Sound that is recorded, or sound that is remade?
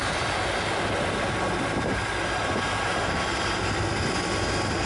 recorded